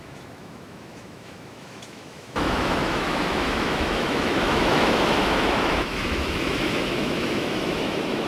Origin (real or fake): fake